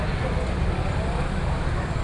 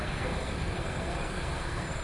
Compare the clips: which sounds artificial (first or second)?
second